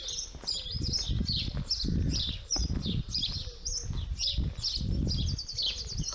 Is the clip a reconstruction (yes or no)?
no